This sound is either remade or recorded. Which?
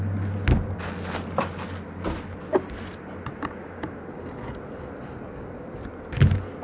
recorded